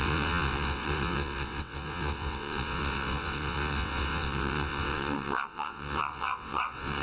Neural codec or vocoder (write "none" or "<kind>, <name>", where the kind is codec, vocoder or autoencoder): vocoder, WaveNeXt